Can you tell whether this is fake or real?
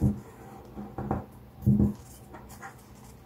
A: real